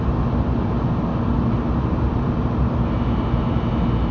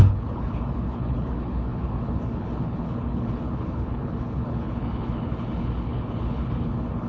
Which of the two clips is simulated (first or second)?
second